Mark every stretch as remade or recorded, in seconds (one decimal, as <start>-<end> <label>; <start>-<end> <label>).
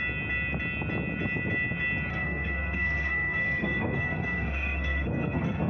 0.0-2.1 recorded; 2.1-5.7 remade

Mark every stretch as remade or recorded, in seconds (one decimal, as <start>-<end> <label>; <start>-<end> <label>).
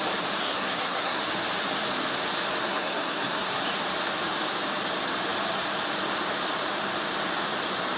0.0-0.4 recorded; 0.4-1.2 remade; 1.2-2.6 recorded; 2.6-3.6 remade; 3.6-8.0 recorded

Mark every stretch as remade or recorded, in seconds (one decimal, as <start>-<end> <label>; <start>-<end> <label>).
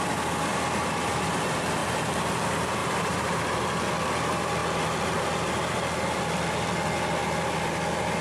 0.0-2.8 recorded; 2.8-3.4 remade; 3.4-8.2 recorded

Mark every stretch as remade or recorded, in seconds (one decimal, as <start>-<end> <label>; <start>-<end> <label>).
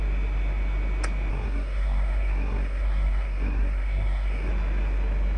0.0-1.3 recorded; 1.3-4.5 remade; 4.5-5.4 recorded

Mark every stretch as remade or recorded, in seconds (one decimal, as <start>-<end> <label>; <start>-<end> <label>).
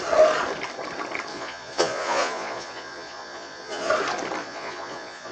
0.0-1.3 recorded; 1.3-3.9 remade; 3.9-4.4 recorded; 4.4-5.3 remade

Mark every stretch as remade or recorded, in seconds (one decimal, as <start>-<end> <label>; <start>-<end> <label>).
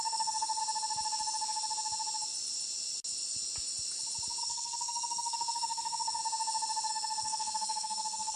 0.0-0.6 remade; 0.6-4.4 recorded; 4.4-6.2 remade; 6.2-6.9 recorded; 6.9-8.4 remade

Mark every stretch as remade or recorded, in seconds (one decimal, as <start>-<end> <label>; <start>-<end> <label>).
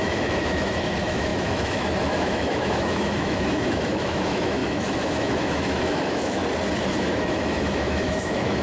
0.0-6.4 remade; 6.4-7.0 recorded; 7.0-8.6 remade